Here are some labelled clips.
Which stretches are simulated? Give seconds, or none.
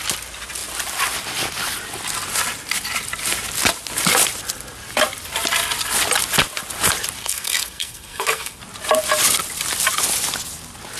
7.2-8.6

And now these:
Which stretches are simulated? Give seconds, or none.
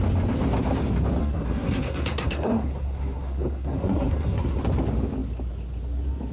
1.2-4.6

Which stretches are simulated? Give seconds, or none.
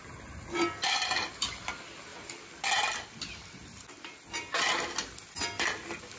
none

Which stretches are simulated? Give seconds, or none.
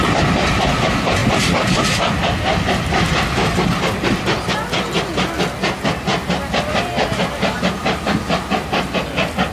none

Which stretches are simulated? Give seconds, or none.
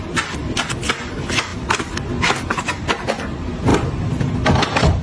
none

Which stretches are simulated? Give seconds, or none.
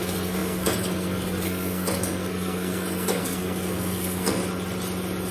0.0-4.4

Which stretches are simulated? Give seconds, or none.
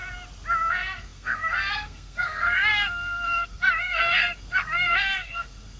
0.7-5.8